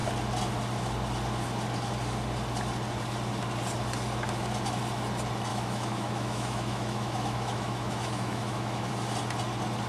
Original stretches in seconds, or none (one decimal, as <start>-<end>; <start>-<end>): 0.0-5.5; 8.9-9.9